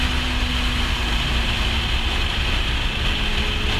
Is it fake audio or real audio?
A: real